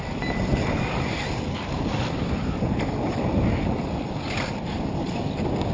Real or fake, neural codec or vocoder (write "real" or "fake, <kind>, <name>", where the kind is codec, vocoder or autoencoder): real